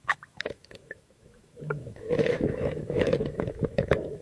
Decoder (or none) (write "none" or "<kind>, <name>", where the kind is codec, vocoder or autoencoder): autoencoder, DAC-VAE